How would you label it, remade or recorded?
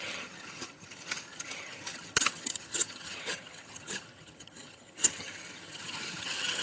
remade